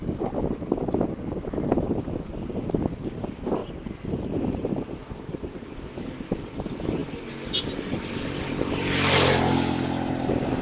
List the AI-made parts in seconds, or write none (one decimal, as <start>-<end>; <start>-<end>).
3.6-4.7